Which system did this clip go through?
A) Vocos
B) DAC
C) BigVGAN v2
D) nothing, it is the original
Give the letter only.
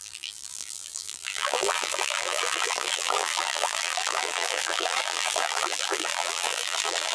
C